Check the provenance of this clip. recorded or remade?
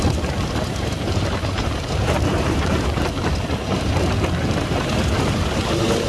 remade